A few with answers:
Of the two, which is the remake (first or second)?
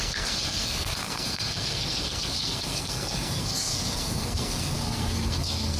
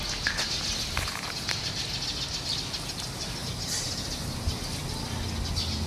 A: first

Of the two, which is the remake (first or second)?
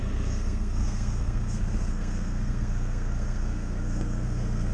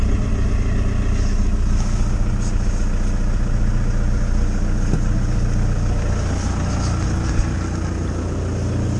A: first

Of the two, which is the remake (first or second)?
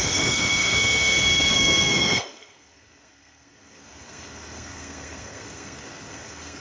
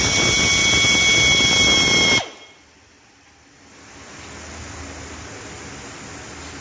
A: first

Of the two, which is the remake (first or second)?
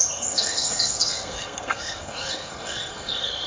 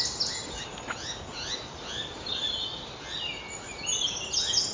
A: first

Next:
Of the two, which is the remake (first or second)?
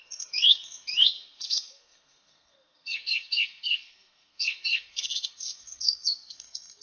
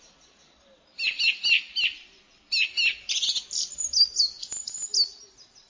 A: first